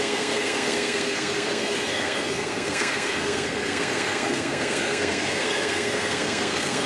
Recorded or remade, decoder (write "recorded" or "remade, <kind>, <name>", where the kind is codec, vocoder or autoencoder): remade, codec, SNAC